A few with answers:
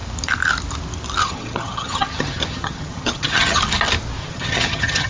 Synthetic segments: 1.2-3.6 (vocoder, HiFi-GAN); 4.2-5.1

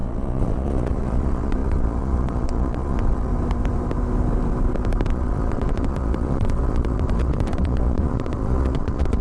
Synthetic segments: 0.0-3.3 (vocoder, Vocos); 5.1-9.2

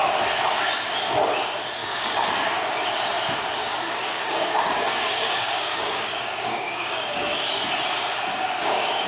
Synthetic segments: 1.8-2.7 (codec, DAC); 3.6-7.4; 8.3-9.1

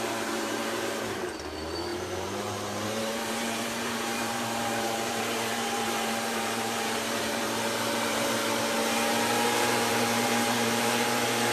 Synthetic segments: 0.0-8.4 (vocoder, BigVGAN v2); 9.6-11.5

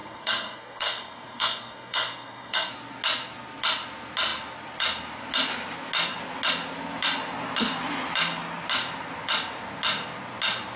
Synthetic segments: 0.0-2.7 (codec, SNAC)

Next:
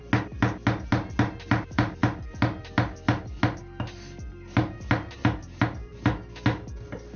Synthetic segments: none

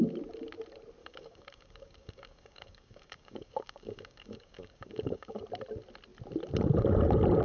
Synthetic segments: 1.0-5.4 (codec, DAC)

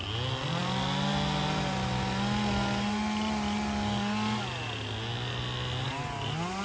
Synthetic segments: none